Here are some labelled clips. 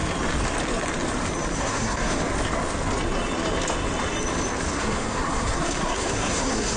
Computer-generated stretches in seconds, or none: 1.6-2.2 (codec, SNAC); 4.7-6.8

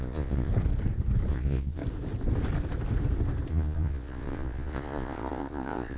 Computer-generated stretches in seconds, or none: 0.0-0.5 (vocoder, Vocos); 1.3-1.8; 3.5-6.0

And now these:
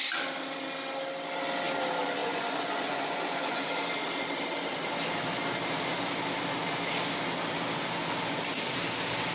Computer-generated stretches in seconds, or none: 2.2-3.7 (vocoder, Vocos)

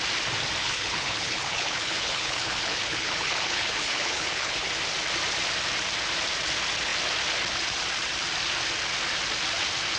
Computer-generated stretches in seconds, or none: 0.6-4.7 (codec, HILCodec)